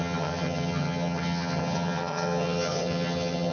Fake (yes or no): yes